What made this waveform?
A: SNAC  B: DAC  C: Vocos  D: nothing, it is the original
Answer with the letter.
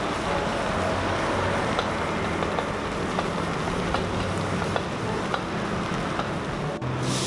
D